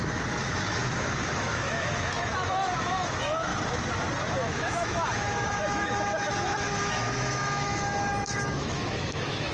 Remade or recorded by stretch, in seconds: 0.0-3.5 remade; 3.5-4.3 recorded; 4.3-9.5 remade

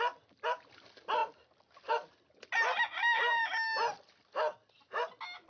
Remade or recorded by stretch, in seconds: 0.0-5.5 recorded

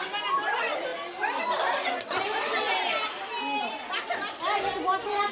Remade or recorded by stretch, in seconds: 0.0-5.3 recorded

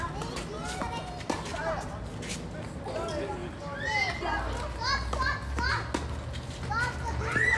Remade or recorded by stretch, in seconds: 0.0-7.6 recorded

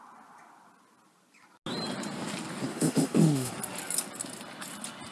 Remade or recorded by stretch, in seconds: 0.0-2.7 recorded; 2.7-3.5 remade; 3.5-5.1 recorded

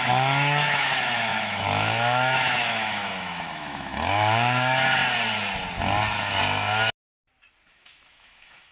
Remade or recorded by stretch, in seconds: 0.0-5.0 remade; 5.0-7.7 recorded; 7.7-8.7 remade

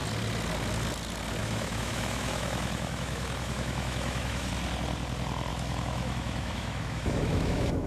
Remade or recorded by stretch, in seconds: 0.0-1.4 recorded; 1.4-4.5 remade; 4.5-5.5 recorded; 5.5-7.9 remade

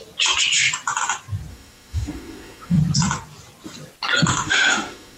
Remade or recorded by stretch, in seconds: 0.0-1.5 recorded; 1.5-2.8 remade; 2.8-4.3 recorded; 4.3-5.2 remade